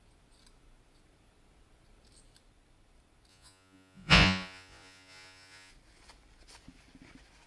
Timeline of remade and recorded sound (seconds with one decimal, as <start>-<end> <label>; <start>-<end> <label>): 0.0-3.3 recorded; 3.3-5.7 remade; 5.7-7.5 recorded